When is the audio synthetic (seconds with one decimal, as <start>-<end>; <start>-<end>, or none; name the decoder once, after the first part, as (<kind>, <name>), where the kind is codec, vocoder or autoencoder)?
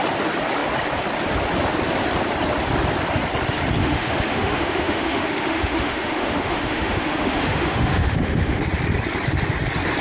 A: 3.8-8.6 (autoencoder, DAC-VAE)